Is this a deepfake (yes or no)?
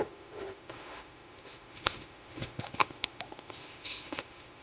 yes